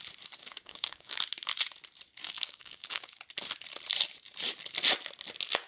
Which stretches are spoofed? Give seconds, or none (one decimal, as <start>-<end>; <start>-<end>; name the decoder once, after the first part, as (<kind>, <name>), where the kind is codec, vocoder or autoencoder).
0.4-1.2 (codec, DAC); 2.2-3.2

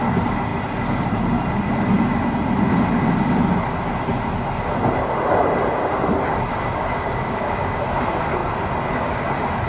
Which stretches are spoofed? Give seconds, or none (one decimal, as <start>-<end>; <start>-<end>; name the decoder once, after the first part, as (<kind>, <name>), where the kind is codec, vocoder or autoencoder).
6.5-7.8 (codec, DAC)

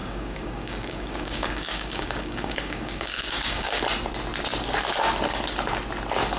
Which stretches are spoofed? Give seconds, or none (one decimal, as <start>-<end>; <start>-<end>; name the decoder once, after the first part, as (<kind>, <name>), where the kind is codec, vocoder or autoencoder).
0.0-3.8 (codec, DAC)

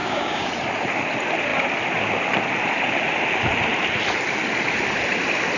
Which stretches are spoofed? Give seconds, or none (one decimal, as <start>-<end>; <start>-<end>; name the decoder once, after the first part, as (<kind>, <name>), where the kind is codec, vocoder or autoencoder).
0.0-0.5 (codec, DAC)

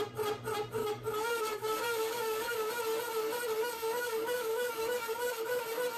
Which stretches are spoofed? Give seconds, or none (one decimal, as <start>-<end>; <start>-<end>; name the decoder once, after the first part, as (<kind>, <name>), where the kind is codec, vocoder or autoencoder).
0.8-2.7 (codec, DAC); 3.6-5.6

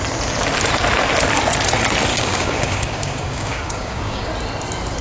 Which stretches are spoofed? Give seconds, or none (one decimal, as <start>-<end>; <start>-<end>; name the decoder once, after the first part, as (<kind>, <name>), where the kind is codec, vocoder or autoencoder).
2.1-4.3 (codec, DAC)

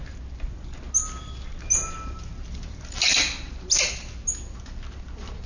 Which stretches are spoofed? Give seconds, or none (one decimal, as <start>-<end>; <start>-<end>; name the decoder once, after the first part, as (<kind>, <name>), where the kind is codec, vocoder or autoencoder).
none